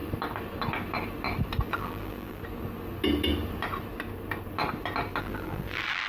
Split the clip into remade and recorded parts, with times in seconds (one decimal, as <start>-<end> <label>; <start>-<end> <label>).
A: 0.0-1.7 recorded; 1.7-2.4 remade; 2.4-5.2 recorded; 5.2-6.1 remade